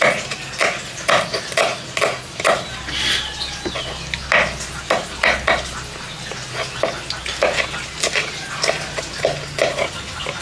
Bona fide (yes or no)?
yes